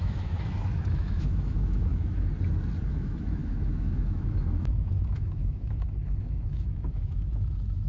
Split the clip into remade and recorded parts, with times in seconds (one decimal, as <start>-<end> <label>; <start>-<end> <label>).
0.0-2.3 remade; 2.3-2.9 recorded; 2.9-7.9 remade